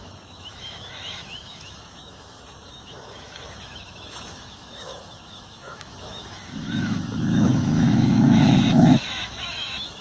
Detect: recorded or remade remade